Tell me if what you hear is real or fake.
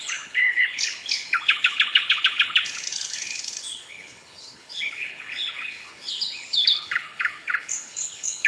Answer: fake